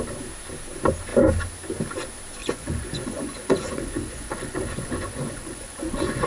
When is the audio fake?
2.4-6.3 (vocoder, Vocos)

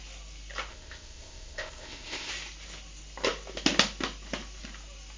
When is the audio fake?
0.7-2.3 (codec, ZipCodec)